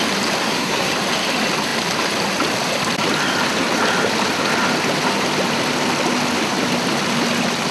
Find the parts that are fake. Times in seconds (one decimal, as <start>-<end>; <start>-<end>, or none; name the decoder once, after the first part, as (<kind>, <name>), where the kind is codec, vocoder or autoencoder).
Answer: 0.4-0.9 (codec, SNAC)